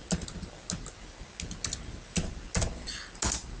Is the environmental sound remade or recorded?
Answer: recorded